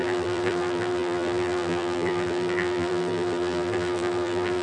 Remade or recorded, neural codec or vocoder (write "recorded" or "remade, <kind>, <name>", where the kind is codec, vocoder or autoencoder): remade, vocoder, BigVGAN v2